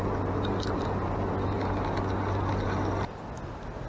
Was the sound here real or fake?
real